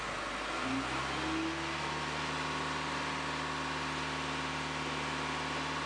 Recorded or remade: recorded